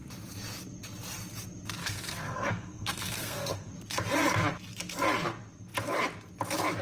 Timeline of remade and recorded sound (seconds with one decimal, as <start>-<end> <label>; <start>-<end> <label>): 0.0-1.8 recorded; 1.8-3.7 remade; 3.7-6.8 recorded